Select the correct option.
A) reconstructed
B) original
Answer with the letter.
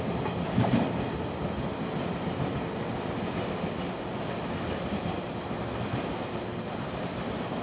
B